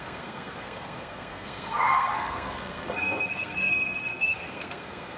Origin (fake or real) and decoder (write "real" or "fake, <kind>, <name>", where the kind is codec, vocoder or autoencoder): fake, codec, SNAC